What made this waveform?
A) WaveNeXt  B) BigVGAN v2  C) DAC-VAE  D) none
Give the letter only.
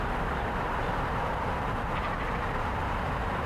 B